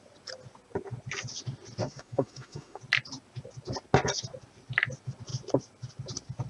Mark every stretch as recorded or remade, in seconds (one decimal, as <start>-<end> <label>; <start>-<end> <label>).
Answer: 0.0-1.8 recorded; 1.8-2.8 remade; 2.8-6.5 recorded